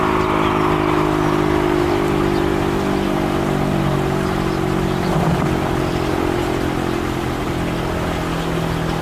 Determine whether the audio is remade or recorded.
recorded